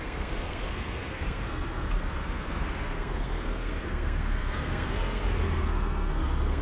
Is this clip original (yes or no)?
no